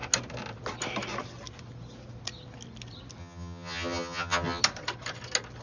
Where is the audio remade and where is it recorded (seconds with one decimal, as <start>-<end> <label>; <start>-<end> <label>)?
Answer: 0.0-3.2 recorded; 3.2-4.6 remade; 4.6-5.6 recorded